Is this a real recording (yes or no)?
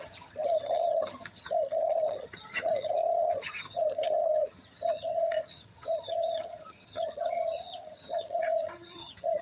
no